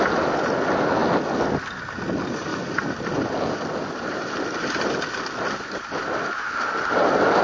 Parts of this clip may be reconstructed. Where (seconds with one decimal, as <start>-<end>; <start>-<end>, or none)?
2.5-4.9